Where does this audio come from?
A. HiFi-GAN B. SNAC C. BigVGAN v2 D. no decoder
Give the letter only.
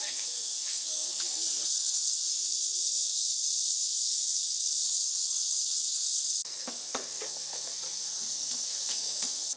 B